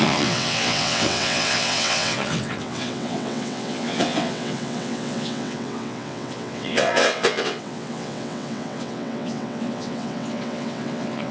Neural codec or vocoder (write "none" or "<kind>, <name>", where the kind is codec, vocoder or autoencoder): vocoder, WaveNeXt